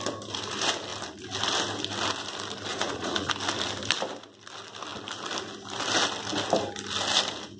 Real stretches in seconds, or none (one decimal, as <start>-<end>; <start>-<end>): 0.0-2.7; 3.3-7.6